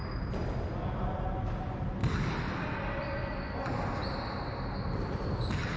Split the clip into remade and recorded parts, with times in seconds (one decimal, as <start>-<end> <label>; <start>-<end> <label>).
0.0-5.8 recorded